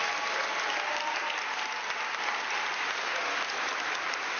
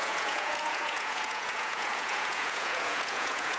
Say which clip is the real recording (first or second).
first